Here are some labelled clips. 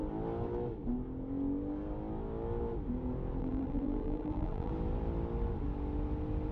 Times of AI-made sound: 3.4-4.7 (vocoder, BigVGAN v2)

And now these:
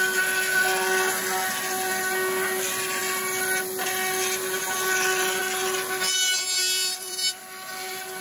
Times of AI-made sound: 6.3-7.4 (vocoder, BigVGAN v2)

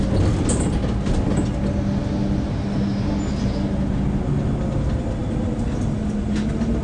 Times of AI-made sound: none

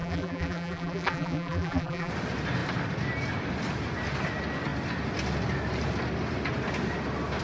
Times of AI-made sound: 0.0-2.1 (vocoder, BigVGAN v2)